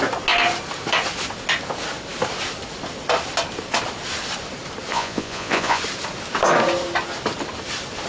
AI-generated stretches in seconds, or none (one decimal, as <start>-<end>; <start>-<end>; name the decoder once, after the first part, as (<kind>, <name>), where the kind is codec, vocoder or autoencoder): 4.9-5.8 (vocoder, Vocos)